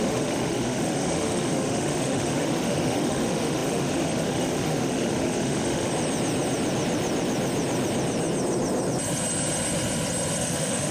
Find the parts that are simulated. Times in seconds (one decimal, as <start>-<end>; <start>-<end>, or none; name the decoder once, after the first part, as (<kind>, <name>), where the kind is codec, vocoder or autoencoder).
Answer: 0.0-5.9 (autoencoder, DAC-VAE); 10.4-10.9